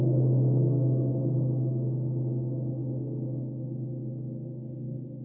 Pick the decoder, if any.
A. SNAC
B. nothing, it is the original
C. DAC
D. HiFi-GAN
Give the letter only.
C